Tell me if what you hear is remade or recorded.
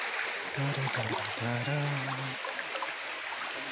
recorded